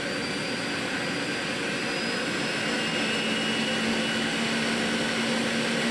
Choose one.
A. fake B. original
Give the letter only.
B